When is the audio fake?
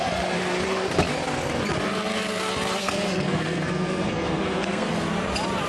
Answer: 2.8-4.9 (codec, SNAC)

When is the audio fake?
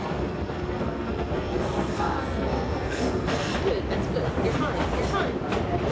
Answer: 0.0-3.5 (codec, SNAC)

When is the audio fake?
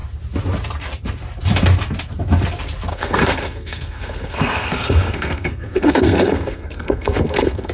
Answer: 2.9-7.7 (codec, SNAC)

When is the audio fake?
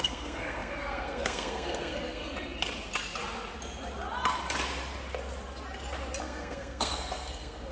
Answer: 0.0-2.2 (codec, SNAC); 6.2-7.7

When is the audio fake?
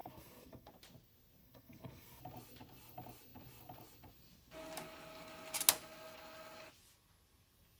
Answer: 0.0-0.7 (codec, SNAC); 1.4-2.2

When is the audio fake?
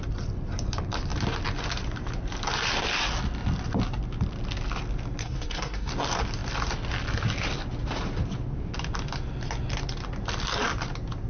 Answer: 5.2-5.9 (codec, SNAC)